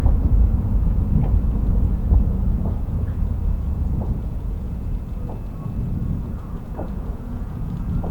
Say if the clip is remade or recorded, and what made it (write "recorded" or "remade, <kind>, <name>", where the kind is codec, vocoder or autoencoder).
remade, vocoder, Vocos